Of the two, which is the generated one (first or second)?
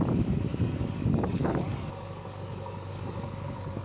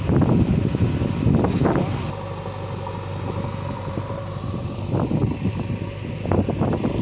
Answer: first